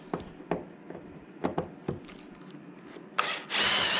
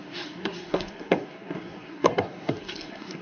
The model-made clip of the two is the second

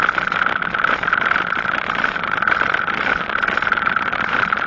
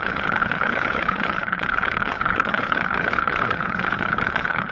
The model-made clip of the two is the second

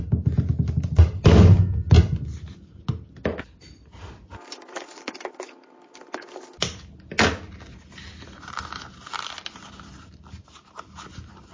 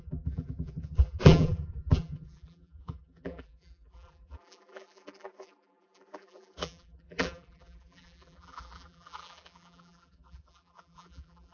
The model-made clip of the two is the second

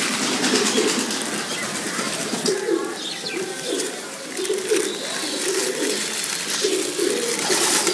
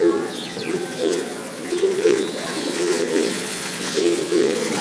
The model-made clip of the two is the second